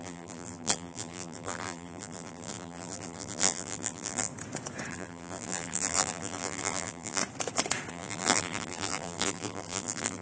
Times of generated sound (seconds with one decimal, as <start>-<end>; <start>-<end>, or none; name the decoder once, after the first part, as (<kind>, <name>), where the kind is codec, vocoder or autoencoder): 0.0-4.3 (vocoder, BigVGAN v2); 4.9-7.2; 7.9-10.2